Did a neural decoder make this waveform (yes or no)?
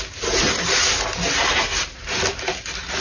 no